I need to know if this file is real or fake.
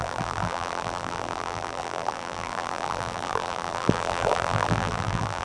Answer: fake